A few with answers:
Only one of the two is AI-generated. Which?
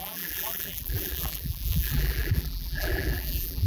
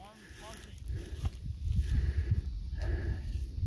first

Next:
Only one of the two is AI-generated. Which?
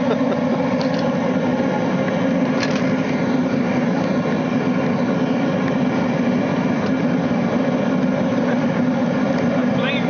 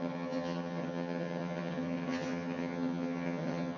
second